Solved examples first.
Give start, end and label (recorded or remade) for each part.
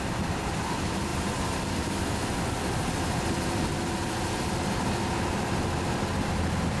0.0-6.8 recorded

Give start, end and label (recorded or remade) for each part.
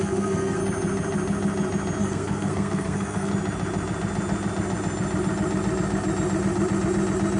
0.0-0.6 remade; 0.6-2.0 recorded; 2.0-3.3 remade; 3.3-7.4 recorded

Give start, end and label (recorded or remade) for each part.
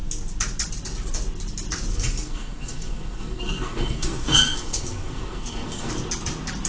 0.0-1.9 recorded; 1.9-5.9 remade; 5.9-6.7 recorded